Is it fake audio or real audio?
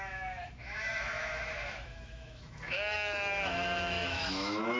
fake